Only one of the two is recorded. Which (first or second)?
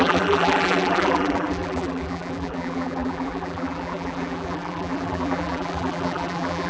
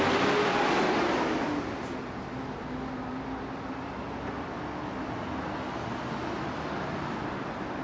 second